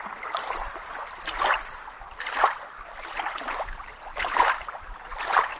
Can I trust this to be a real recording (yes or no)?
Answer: no